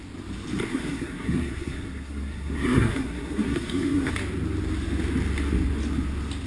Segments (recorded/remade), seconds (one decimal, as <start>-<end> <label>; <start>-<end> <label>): 0.0-0.7 recorded; 0.7-4.1 remade; 4.1-6.5 recorded